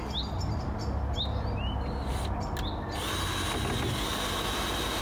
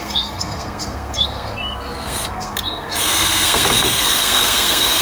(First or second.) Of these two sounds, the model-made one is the second